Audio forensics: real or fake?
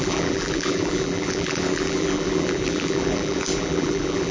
fake